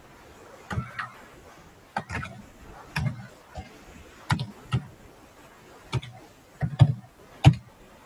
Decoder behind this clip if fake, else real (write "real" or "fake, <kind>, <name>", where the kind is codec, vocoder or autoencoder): real